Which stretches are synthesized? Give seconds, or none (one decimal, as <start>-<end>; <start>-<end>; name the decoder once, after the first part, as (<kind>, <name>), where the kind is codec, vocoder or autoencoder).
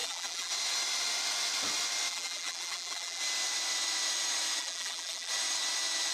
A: 0.0-0.5 (vocoder, BigVGAN v2); 2.1-3.2; 4.6-5.3